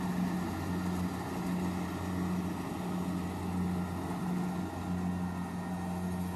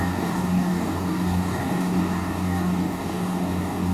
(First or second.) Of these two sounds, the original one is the first